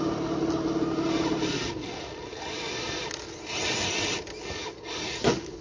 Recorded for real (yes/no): yes